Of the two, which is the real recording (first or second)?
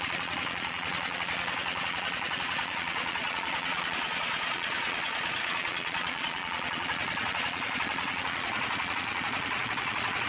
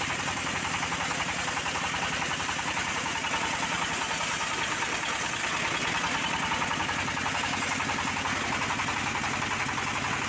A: second